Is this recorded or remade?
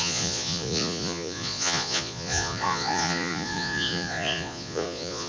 remade